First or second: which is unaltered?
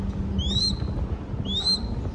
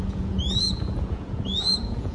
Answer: first